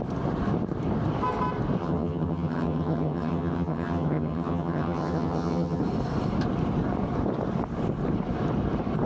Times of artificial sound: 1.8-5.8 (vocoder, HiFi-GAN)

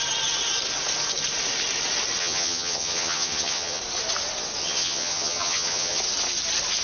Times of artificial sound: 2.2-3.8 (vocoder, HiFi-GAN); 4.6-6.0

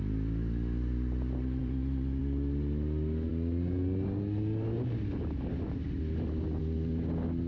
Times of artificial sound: none